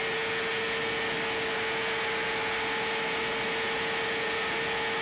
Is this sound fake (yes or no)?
no